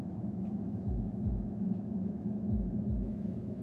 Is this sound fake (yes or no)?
yes